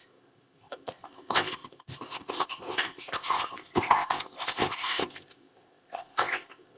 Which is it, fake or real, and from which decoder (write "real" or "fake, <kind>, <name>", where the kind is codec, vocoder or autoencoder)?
fake, codec, ZipCodec